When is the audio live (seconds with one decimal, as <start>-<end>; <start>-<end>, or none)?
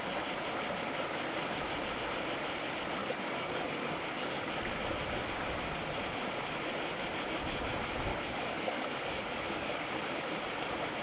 0.0-3.0; 4.5-8.1; 9.9-11.0